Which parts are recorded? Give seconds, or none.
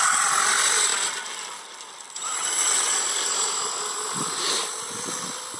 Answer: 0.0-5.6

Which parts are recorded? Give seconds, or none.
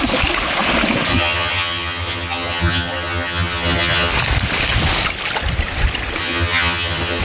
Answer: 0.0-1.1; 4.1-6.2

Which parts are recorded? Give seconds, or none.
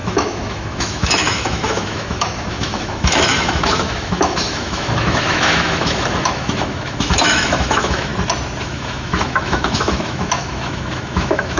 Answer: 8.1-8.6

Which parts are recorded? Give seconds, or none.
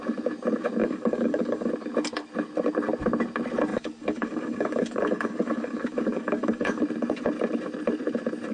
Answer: 0.0-0.8; 1.7-3.7; 6.8-8.5